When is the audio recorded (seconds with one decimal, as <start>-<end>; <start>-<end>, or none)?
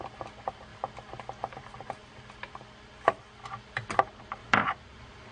0.0-5.3